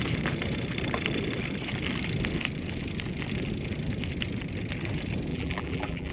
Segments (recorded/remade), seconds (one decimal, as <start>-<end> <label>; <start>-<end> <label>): 0.0-5.3 recorded; 5.3-6.1 remade